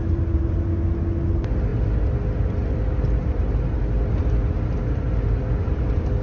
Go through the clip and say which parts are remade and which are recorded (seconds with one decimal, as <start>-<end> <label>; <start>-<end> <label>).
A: 0.0-6.2 recorded